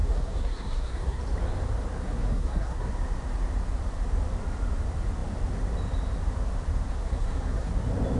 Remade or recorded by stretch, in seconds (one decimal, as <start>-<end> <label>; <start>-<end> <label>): 0.0-1.2 remade; 1.2-2.0 recorded; 2.0-2.9 remade; 2.9-6.9 recorded; 6.9-7.7 remade; 7.7-8.2 recorded